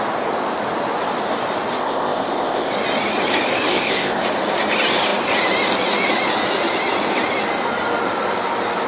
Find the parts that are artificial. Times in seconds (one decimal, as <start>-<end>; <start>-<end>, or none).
1.8-2.7; 3.7-4.2